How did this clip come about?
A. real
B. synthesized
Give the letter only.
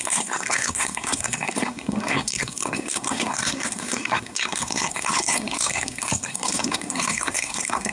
B